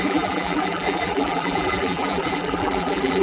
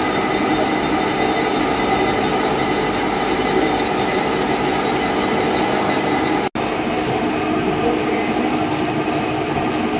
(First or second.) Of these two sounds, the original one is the second